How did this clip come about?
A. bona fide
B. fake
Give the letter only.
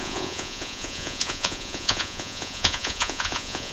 B